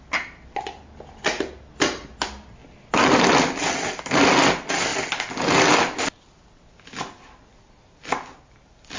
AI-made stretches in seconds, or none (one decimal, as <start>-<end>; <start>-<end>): none